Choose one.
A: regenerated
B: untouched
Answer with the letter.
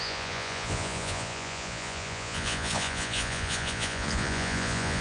A